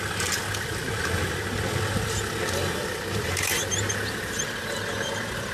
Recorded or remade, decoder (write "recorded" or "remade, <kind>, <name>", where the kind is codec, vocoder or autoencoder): recorded